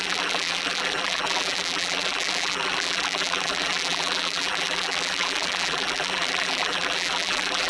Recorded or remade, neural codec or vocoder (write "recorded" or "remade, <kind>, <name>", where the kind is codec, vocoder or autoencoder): remade, vocoder, BigVGAN v2